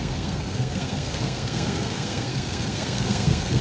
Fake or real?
fake